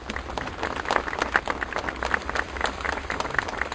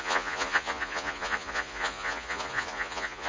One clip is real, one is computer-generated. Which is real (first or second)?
first